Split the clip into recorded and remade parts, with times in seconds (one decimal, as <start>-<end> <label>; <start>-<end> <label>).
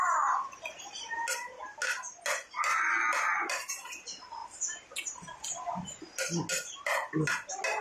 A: 0.0-7.8 recorded